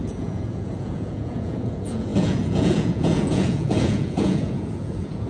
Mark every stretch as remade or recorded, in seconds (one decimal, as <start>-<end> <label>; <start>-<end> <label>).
0.0-5.3 remade